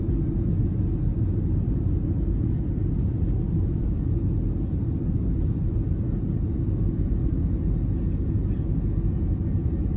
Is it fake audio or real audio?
real